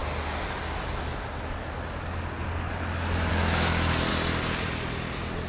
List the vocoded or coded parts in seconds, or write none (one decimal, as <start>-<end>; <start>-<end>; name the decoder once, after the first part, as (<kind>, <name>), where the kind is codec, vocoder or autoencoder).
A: 3.3-4.1 (autoencoder, DAC-VAE)